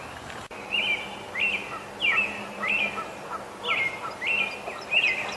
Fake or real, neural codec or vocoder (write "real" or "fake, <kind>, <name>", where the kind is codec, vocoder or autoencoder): real